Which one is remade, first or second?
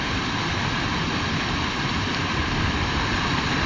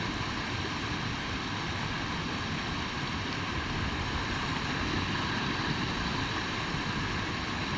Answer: first